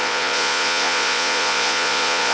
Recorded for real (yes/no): no